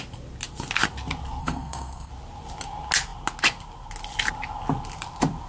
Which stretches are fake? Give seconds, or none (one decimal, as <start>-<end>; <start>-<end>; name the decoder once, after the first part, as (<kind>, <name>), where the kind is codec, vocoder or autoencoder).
1.4-2.1 (codec, SNAC)